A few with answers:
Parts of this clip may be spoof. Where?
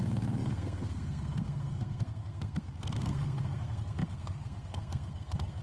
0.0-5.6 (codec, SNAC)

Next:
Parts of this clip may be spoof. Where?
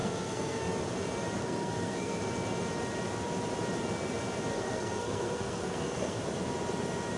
0.0-0.6 (codec, SNAC); 1.4-2.2; 4.5-6.2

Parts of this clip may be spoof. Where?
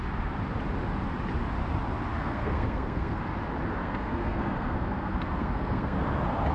2.2-3.2 (codec, SNAC); 3.8-6.0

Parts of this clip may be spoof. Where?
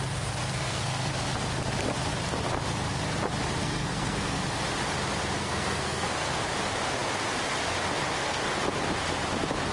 0.4-1.1 (codec, SNAC); 3.6-4.4; 5.4-6.4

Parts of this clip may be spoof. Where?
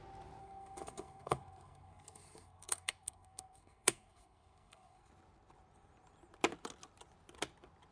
0.4-5.1 (codec, SNAC)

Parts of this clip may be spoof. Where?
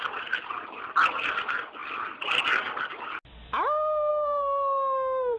4.1-5.4 (codec, SNAC)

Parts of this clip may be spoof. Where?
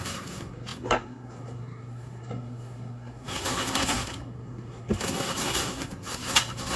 0.0-6.8 (codec, SNAC)